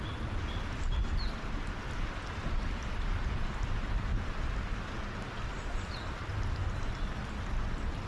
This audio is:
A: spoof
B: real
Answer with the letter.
B